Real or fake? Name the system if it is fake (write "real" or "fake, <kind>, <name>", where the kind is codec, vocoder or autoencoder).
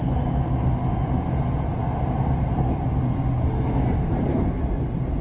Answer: real